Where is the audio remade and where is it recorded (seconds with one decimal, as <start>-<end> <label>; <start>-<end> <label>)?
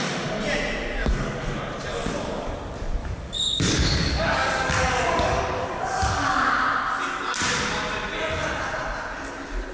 0.0-1.0 recorded; 1.0-1.6 remade; 1.6-2.0 recorded; 2.0-2.5 remade; 2.5-3.0 recorded; 3.0-6.6 remade; 6.6-9.7 recorded